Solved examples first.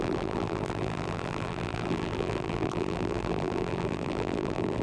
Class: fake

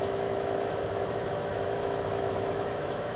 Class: fake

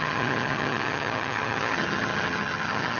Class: fake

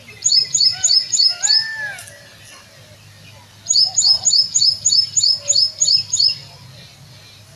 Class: real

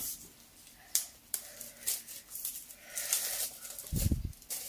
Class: real